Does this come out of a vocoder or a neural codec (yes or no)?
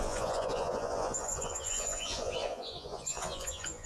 yes